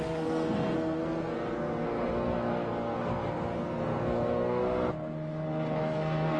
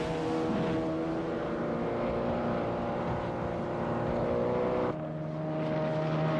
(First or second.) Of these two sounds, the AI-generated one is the first